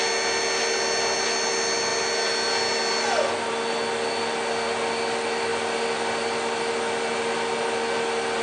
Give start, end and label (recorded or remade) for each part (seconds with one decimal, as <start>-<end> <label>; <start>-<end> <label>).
0.0-8.4 recorded